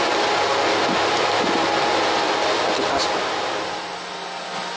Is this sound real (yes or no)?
yes